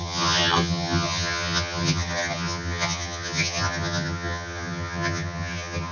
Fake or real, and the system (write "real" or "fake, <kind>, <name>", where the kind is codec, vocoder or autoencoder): fake, vocoder, HiFi-GAN